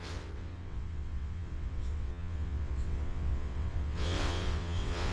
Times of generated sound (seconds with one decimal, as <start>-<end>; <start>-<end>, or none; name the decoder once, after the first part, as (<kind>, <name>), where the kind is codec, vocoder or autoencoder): 0.0-5.1 (vocoder, WaveNeXt)